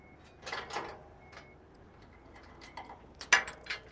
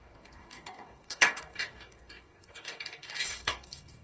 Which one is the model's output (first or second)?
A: second